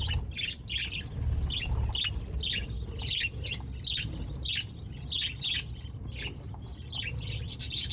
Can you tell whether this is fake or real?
real